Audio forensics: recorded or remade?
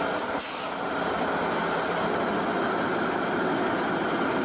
recorded